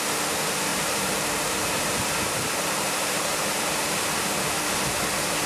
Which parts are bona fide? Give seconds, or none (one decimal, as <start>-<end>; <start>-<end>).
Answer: 0.0-0.7; 4.0-5.5

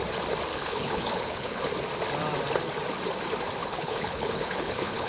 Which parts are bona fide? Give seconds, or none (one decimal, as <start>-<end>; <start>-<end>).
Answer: 0.0-0.5; 1.6-3.6

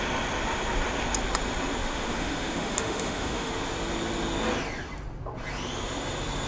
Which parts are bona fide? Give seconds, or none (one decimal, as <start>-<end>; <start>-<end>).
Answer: 0.0-1.8; 3.5-6.5

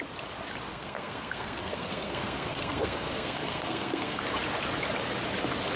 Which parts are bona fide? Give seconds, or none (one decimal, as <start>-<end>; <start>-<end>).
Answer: 0.0-0.7; 4.2-5.8

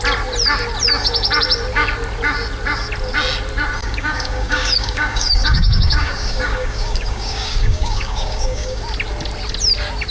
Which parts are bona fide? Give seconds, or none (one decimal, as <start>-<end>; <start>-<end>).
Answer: 0.0-3.8; 8.8-10.1

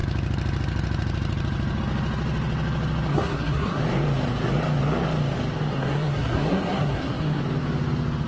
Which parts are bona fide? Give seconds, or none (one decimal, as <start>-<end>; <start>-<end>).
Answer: 0.0-3.1; 3.8-5.7; 7.4-8.3

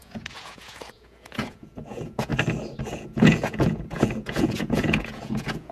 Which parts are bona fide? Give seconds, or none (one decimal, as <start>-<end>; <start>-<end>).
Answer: 2.3-2.8

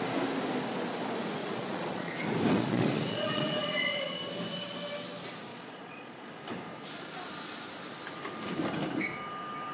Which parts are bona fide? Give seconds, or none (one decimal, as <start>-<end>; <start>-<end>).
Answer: 0.0-1.4; 2.1-2.5; 4.1-5.5; 6.3-9.7